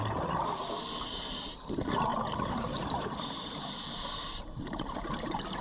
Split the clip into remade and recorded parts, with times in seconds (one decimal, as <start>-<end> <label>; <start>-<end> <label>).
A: 0.0-2.1 recorded; 2.1-5.6 remade